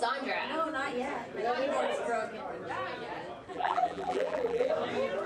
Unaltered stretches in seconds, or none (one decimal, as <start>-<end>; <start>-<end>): 0.0-3.5; 4.7-5.3